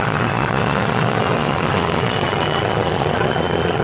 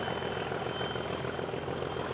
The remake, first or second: first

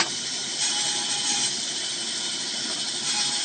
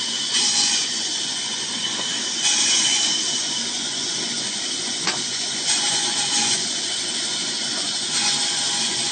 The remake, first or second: second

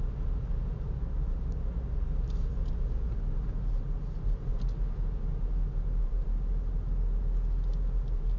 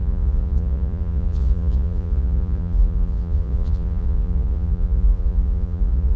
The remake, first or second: second